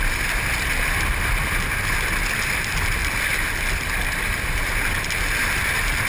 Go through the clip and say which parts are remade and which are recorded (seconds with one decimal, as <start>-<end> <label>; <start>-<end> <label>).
0.0-6.1 recorded